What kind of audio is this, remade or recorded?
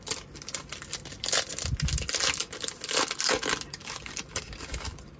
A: recorded